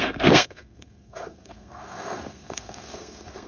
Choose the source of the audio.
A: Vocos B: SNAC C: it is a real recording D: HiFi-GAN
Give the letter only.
B